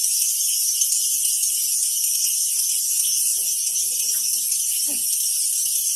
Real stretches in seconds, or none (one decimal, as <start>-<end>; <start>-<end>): 0.0-1.8; 2.8-6.0